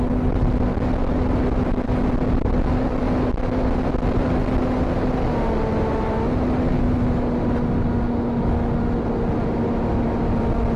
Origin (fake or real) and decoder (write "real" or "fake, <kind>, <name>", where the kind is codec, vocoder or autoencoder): real